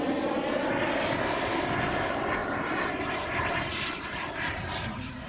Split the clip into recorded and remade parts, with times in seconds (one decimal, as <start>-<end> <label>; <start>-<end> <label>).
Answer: 0.0-2.4 recorded; 2.4-5.3 remade